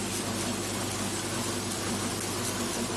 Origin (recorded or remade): recorded